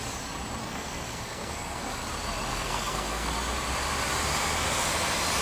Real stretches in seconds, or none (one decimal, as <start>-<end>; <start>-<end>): 0.0-0.6; 2.0-2.5; 3.3-5.4